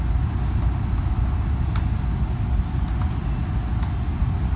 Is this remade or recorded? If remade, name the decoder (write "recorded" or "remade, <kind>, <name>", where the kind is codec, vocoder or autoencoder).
recorded